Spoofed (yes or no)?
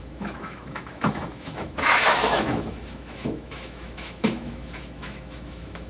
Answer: yes